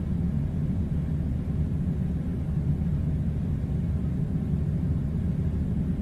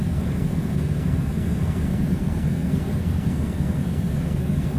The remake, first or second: second